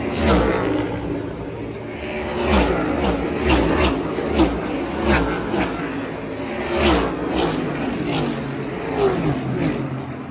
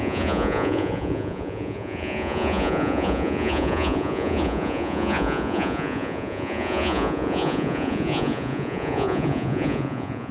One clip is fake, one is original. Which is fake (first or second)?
second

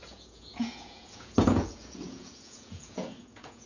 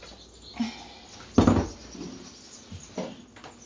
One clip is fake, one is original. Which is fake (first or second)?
first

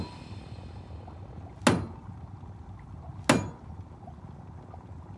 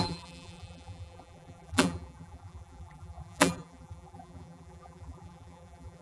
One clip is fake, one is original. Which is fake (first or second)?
second